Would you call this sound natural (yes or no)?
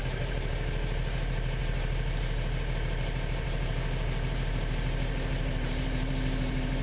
no